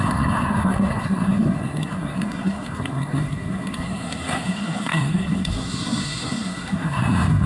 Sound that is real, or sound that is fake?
fake